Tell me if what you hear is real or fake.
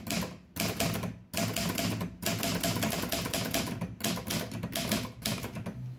real